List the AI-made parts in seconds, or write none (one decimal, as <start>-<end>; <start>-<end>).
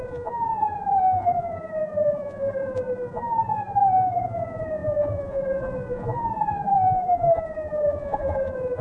0.0-8.8